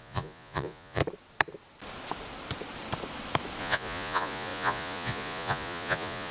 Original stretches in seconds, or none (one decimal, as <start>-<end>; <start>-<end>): 1.0-3.6